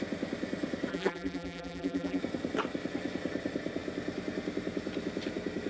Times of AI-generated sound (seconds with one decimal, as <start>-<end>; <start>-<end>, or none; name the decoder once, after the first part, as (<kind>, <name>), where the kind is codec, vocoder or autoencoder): 0.9-2.2 (vocoder, BigVGAN v2)